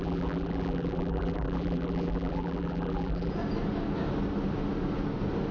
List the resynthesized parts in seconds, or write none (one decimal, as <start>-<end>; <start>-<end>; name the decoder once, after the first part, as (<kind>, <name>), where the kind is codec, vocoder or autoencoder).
0.0-3.3 (vocoder, BigVGAN v2)